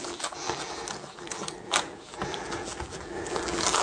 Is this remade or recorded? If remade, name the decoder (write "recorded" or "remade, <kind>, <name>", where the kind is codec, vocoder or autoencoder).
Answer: remade, vocoder, BigVGAN v2